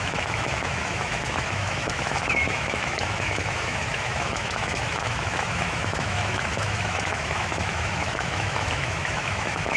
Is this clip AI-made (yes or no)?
yes